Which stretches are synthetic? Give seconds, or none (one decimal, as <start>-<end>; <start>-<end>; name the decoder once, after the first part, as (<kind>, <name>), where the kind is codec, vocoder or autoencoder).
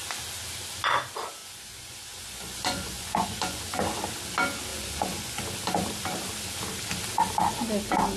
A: 1.4-3.6 (vocoder, Vocos); 4.7-5.4